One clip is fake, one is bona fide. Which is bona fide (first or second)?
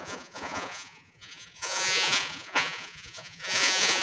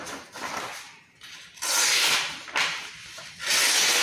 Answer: second